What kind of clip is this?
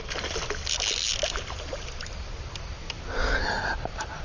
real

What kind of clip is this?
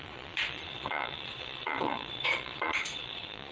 fake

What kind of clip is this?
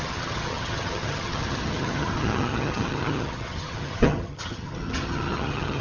fake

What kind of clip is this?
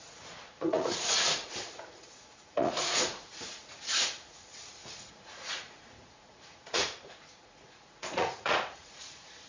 fake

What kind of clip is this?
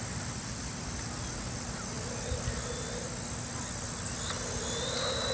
real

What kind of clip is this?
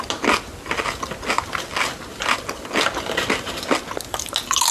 real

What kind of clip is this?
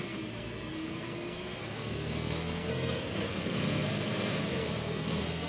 fake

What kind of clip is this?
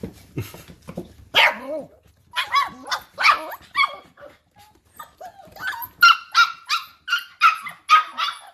real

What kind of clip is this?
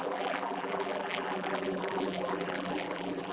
fake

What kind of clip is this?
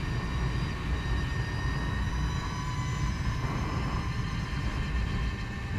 real